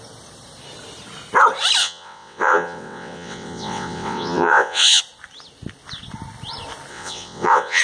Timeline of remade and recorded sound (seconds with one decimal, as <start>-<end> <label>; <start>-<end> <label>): 0.0-1.8 recorded; 1.8-5.0 remade; 5.0-6.9 recorded; 6.9-7.8 remade